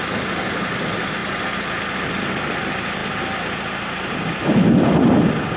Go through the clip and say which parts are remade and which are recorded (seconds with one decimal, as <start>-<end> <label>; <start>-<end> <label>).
0.0-5.6 recorded